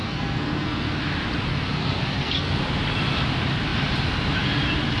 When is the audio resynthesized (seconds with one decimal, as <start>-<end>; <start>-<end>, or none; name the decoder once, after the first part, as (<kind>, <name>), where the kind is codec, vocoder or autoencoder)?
0.0-1.0 (codec, SNAC); 1.5-2.6